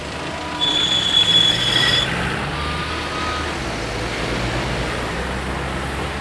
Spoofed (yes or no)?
no